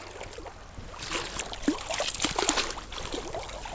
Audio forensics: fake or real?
real